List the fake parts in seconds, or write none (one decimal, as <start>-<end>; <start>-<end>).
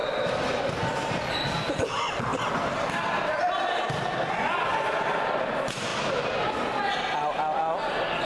0.0-0.6; 2.3-4.0